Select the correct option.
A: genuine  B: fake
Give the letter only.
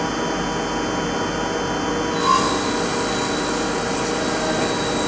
A